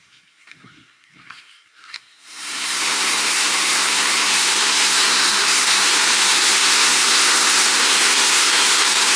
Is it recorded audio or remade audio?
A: remade